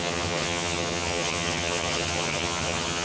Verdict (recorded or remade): remade